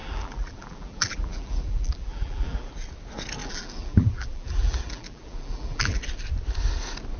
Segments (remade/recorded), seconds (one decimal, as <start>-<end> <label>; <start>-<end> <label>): 0.0-2.7 remade; 2.7-3.4 recorded; 3.4-6.0 remade; 6.0-7.2 recorded